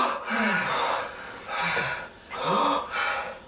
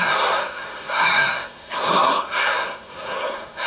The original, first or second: first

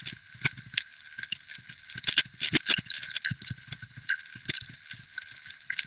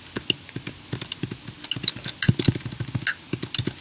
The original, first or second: second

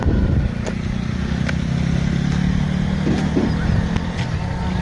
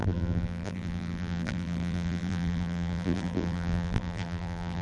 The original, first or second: first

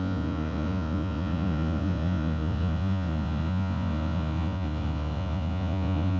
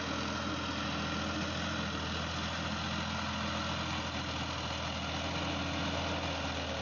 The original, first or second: second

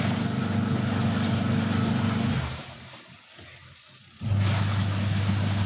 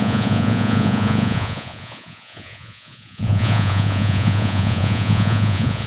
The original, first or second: first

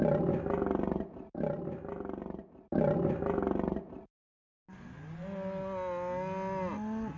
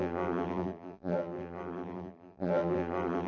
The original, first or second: first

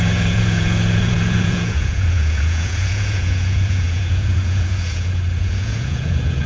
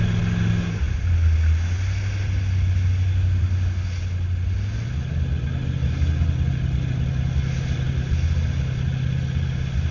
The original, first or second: second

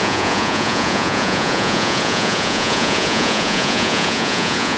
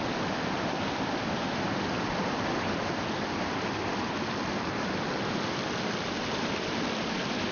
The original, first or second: second